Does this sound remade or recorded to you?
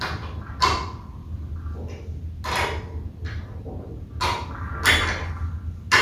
recorded